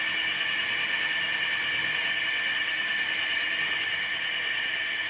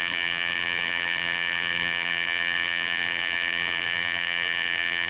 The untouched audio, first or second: first